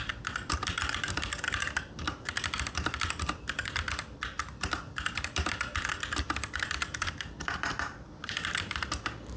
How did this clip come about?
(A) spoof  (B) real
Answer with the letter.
A